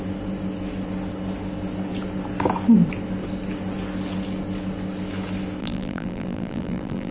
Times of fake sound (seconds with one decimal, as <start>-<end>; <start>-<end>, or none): 5.6-7.1